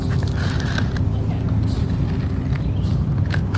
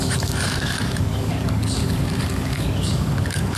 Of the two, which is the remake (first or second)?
second